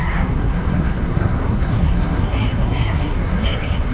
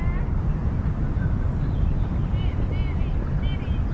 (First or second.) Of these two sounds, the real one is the second